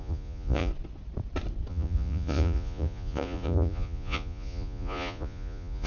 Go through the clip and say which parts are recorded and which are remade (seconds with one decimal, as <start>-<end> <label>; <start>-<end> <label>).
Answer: 0.0-0.7 remade; 0.7-1.7 recorded; 1.7-5.9 remade

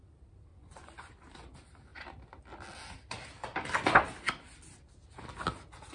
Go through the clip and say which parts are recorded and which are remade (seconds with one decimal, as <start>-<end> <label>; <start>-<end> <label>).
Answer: 0.0-0.5 recorded; 0.5-1.1 remade; 1.1-5.9 recorded

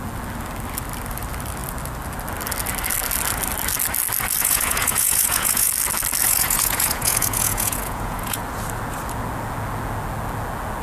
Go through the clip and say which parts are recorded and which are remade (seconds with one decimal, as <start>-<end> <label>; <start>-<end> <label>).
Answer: 0.0-4.4 recorded; 4.4-5.7 remade; 5.7-6.2 recorded; 6.2-8.4 remade; 8.4-10.8 recorded

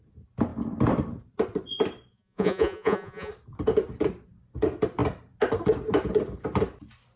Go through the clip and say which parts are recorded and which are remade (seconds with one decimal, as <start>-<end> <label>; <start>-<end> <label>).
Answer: 0.0-2.1 recorded; 2.1-3.3 remade; 3.3-7.2 recorded

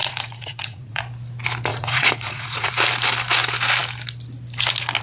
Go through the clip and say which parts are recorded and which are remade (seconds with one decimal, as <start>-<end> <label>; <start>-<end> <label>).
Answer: 0.0-1.0 remade; 1.0-1.7 recorded; 1.7-2.7 remade; 2.7-5.0 recorded

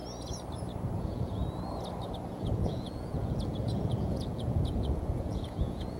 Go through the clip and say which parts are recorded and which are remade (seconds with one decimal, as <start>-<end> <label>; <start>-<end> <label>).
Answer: 0.0-1.0 recorded; 1.0-1.4 remade; 1.4-2.3 recorded; 2.3-6.0 remade

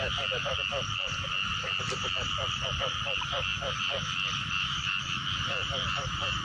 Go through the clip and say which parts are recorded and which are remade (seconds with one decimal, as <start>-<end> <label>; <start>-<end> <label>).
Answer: 0.0-6.4 recorded

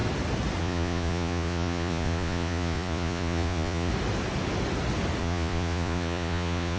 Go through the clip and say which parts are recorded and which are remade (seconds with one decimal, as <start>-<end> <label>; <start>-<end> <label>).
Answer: 0.0-0.6 recorded; 0.6-3.9 remade; 3.9-5.2 recorded; 5.2-6.8 remade